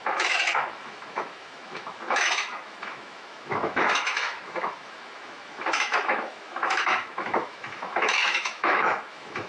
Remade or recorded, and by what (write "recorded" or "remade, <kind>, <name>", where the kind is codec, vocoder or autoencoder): remade, autoencoder, DAC-VAE